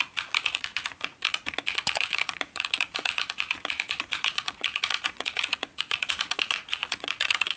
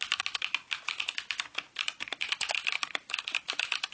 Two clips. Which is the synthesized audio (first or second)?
first